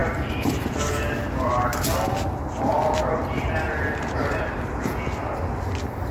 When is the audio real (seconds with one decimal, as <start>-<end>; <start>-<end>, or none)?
1.0-6.1